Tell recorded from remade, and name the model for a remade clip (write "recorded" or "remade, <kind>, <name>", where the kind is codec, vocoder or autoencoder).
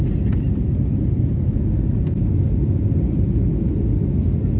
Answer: recorded